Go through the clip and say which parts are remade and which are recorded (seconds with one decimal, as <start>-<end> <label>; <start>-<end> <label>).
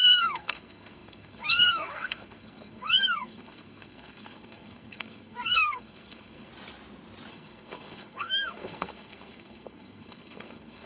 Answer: 0.0-6.5 remade; 6.5-7.3 recorded; 7.3-10.9 remade